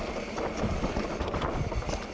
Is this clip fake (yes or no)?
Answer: no